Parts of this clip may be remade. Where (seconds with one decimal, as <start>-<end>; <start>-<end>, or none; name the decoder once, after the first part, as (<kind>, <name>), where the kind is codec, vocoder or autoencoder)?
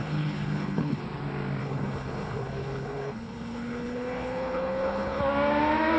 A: 0.0-1.0 (codec, HILCodec); 1.6-5.2